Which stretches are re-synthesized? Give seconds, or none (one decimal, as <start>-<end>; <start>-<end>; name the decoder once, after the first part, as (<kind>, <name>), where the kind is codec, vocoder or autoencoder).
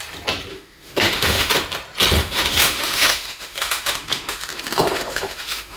0.5-1.5 (autoencoder, DAC-VAE); 2.2-5.8